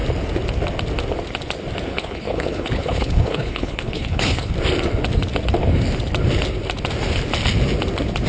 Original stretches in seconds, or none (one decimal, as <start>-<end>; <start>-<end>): 0.0-1.9; 4.5-8.3